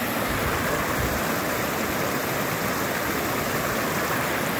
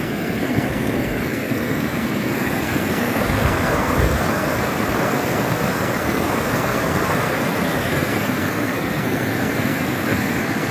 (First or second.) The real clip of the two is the first